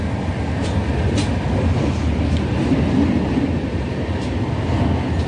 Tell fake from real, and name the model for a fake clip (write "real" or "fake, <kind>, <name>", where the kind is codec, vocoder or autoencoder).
real